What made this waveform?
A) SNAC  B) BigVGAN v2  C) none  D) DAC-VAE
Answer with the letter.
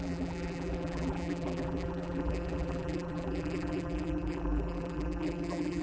B